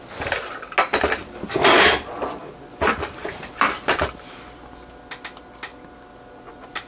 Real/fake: real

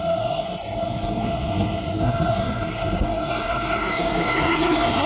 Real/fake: fake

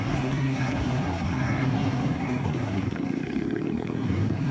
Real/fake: fake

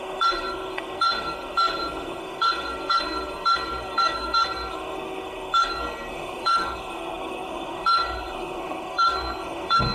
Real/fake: fake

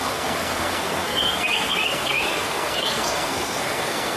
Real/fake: fake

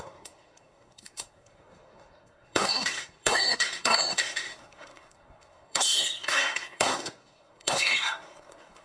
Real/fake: fake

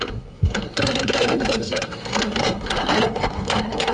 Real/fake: fake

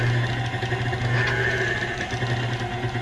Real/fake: real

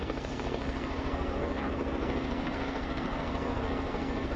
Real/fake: fake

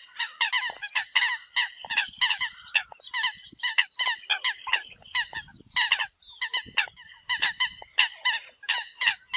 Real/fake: real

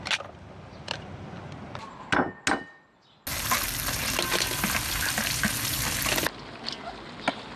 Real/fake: real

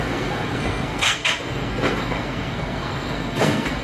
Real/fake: fake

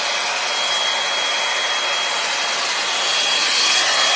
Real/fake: real